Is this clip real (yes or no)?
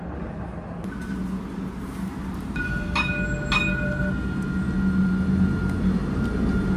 yes